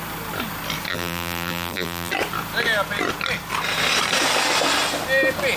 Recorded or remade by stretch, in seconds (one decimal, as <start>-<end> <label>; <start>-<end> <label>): 0.0-0.9 recorded; 0.9-2.1 remade; 2.1-5.6 recorded